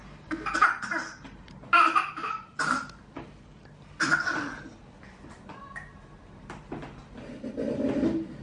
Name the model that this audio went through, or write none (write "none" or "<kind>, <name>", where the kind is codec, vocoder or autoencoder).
none